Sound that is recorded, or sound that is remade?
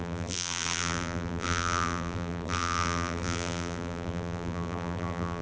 remade